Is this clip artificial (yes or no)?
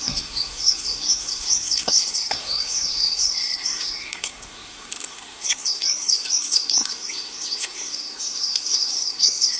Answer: yes